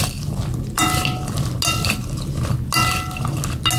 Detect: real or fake real